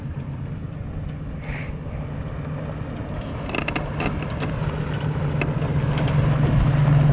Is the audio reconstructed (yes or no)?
no